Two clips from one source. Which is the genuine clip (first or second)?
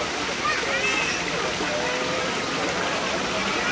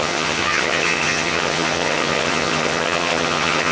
first